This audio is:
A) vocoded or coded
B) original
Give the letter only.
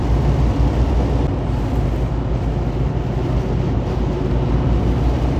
B